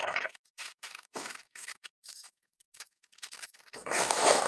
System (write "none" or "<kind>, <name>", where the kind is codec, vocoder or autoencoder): codec, DAC